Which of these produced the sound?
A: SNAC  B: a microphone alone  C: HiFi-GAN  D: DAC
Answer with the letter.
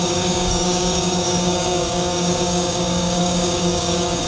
D